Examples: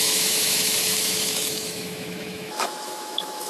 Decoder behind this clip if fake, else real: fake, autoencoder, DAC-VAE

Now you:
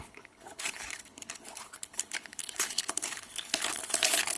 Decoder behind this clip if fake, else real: fake, codec, HILCodec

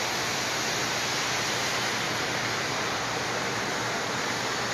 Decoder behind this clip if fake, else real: real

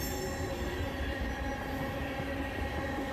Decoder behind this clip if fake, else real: real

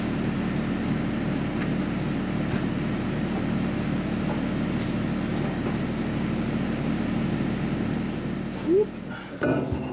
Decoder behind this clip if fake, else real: real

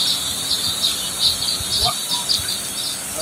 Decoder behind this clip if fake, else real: real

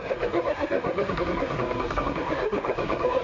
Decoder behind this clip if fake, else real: fake, codec, SNAC